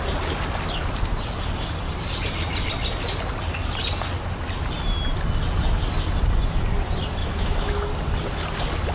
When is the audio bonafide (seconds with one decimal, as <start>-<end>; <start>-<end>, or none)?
0.0-7.2; 7.9-8.9